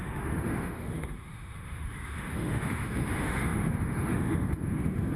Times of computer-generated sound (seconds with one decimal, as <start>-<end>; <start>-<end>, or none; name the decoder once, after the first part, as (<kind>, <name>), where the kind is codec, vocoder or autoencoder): 0.0-5.2 (autoencoder, DAC-VAE)